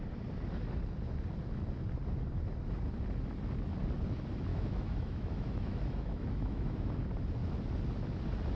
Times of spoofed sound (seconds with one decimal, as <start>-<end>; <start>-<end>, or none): 4.5-6.9